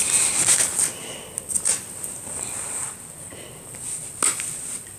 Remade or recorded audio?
recorded